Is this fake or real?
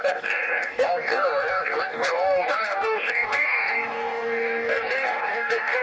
fake